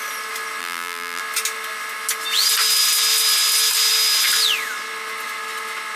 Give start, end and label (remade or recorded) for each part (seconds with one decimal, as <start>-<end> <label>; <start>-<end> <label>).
0.0-0.6 recorded; 0.6-1.2 remade; 1.2-6.0 recorded